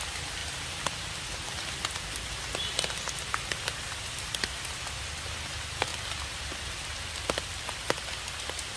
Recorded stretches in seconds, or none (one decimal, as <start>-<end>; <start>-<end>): 0.0-8.8